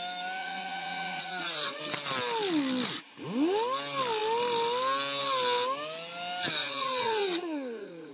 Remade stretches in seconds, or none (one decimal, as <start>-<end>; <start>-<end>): 0.4-1.8; 6.6-8.1